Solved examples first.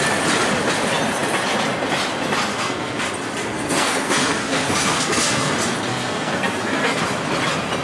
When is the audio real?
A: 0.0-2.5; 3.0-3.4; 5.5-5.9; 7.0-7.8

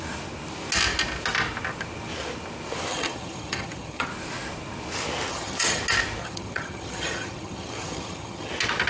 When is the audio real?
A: 0.0-2.9; 4.1-5.3; 5.8-6.2; 8.5-8.9

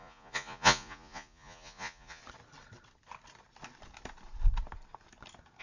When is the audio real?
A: 2.2-5.6

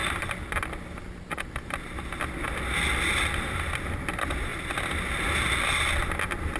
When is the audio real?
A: 0.0-6.6

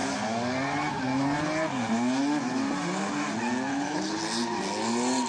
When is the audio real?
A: 0.0-3.7; 4.2-5.3

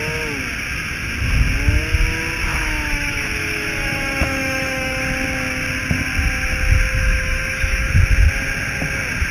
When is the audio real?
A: 0.0-2.5; 5.0-7.0; 7.9-9.3